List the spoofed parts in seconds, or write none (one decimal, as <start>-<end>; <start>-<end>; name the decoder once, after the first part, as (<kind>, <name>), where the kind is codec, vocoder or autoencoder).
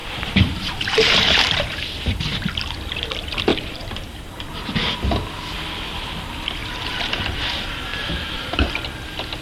0.0-2.0 (vocoder, BigVGAN v2); 3.5-4.5; 6.6-7.5; 7.9-8.7